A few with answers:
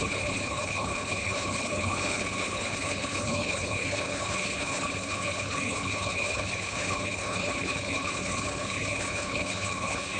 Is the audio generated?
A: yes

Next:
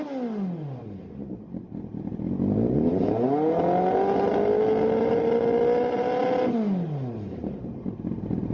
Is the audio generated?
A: no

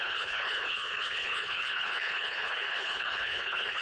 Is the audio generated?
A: yes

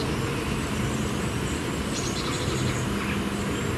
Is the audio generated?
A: no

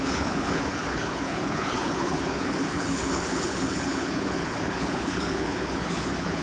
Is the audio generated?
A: yes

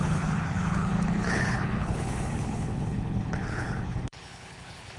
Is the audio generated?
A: yes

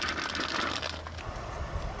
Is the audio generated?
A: no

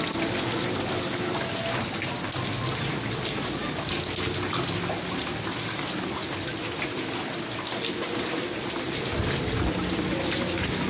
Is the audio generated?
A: no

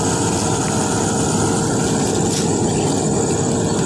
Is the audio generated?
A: no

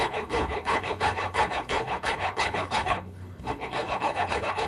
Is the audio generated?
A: yes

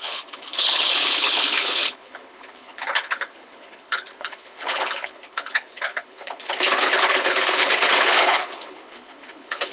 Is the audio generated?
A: yes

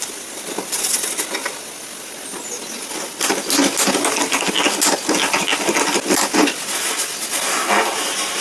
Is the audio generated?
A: no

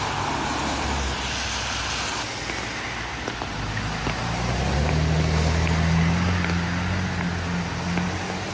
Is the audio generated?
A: no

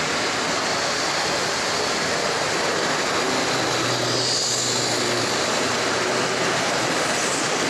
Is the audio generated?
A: no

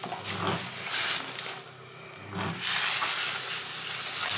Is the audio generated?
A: no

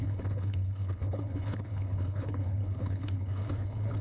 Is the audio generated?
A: yes